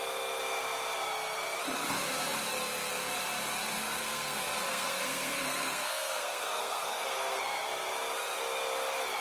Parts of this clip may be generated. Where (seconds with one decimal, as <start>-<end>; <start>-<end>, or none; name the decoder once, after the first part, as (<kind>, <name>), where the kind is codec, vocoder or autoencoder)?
4.0-7.4 (codec, SNAC)